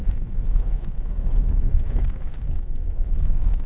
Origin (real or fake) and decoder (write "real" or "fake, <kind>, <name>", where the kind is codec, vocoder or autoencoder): fake, codec, SNAC